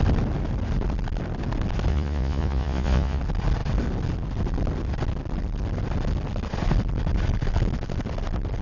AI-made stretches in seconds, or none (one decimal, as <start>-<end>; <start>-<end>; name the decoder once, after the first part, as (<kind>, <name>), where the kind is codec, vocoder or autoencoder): 1.9-3.2 (vocoder, Vocos)